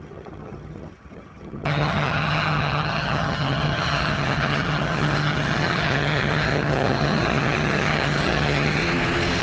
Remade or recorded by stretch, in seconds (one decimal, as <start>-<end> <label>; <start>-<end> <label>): 0.0-8.8 remade; 8.8-9.4 recorded